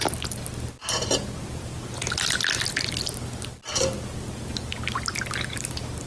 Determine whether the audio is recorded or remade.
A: recorded